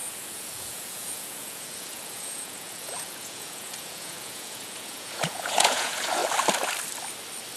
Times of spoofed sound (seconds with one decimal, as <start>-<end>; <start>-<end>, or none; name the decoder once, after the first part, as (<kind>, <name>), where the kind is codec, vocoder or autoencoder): 0.0-6.2 (vocoder, Vocos)